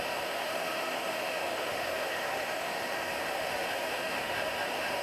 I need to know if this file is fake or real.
fake